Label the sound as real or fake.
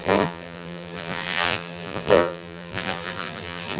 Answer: fake